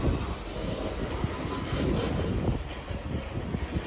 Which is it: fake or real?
real